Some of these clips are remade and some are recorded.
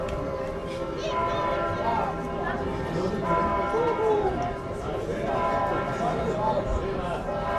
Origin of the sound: remade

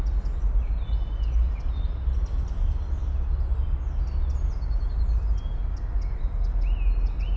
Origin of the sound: recorded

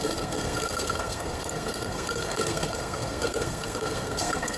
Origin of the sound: remade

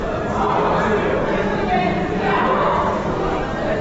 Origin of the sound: remade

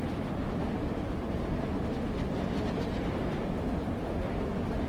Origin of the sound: recorded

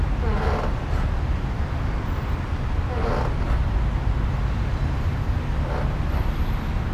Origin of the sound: recorded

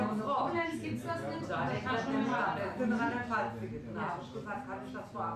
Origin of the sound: recorded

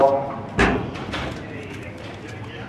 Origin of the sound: recorded